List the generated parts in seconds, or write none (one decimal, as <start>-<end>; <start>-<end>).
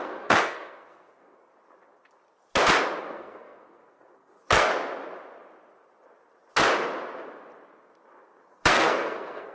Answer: 0.0-1.5; 3.0-4.7; 8.5-9.5